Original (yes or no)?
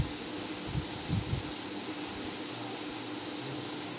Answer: yes